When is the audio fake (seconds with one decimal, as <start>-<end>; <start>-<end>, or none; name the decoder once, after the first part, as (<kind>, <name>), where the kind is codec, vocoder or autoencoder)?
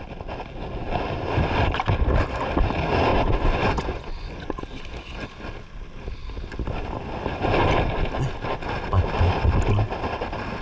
3.1-4.6 (vocoder, Vocos)